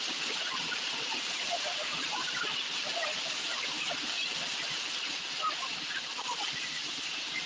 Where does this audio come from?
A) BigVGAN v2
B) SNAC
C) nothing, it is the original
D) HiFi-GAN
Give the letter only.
A